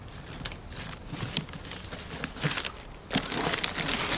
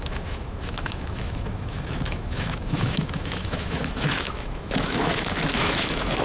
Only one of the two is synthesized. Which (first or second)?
second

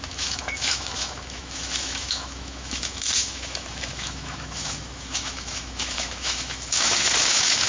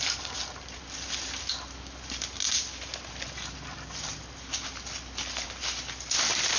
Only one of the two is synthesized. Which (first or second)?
first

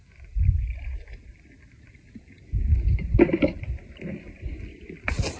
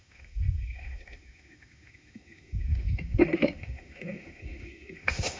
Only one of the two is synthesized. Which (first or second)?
second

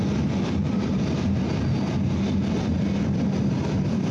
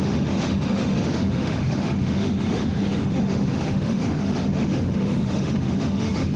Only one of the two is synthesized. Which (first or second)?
second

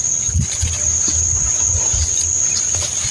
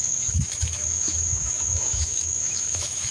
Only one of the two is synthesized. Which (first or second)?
second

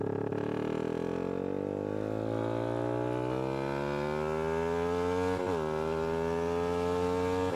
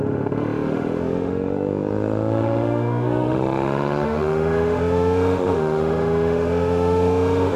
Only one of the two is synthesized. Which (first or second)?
second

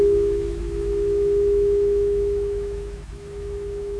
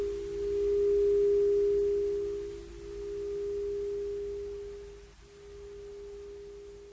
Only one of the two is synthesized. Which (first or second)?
first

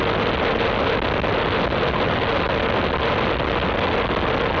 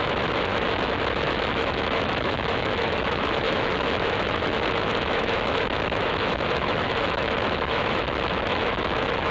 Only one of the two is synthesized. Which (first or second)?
second